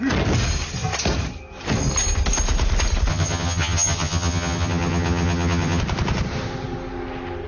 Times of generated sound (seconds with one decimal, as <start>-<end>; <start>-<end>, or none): 3.1-5.8

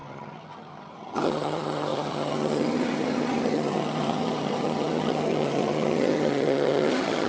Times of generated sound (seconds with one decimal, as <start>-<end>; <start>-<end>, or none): 0.0-7.3

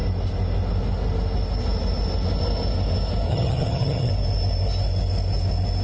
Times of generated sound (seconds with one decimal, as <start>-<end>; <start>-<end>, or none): 3.3-4.1

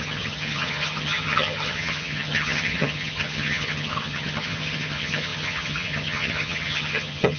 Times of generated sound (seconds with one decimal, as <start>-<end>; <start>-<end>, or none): 0.0-7.4

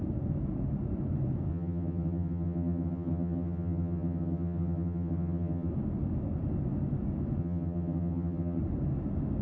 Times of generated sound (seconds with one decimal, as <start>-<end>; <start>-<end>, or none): 1.5-5.7; 7.4-8.6

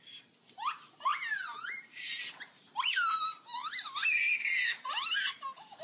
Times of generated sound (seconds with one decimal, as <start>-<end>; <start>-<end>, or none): none